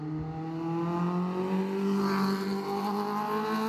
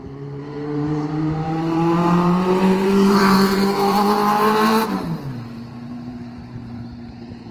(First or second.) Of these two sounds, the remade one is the second